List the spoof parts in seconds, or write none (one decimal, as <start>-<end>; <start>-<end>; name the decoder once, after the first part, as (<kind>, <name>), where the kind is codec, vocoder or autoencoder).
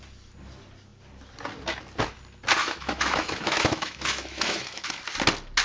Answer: 2.6-5.0 (autoencoder, DAC-VAE)